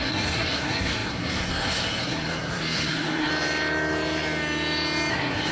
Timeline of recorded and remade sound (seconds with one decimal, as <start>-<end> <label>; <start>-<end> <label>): 0.0-3.3 remade; 3.3-5.1 recorded; 5.1-5.5 remade